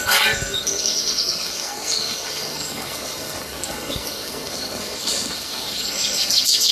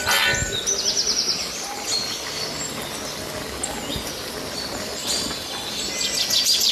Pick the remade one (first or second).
first